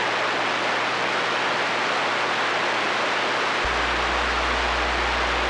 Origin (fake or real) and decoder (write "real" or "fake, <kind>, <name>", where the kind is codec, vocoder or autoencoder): real